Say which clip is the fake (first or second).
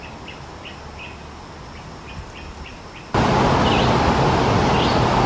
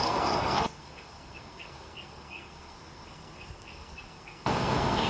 second